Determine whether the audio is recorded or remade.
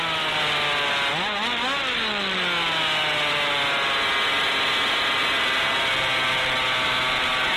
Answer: recorded